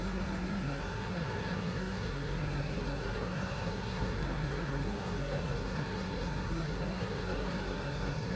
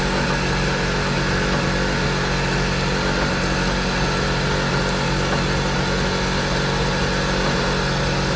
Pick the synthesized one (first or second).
first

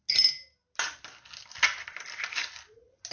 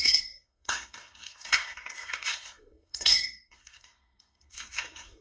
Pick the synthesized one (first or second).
second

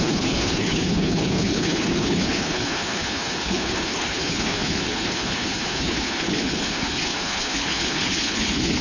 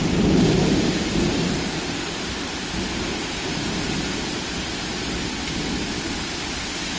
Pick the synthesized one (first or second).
first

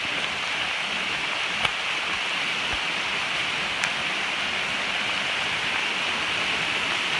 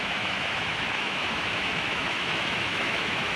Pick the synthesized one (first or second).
second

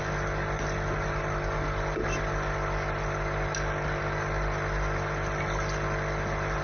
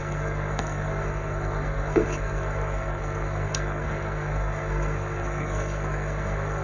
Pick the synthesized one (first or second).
second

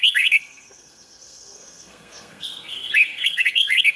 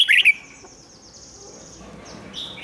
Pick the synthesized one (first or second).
first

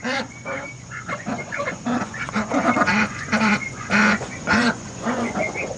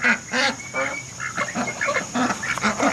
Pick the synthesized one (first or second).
first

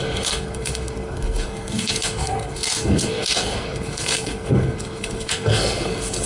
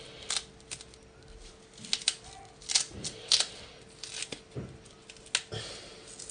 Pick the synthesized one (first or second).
first